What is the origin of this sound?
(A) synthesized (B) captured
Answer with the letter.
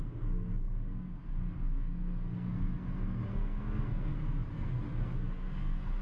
A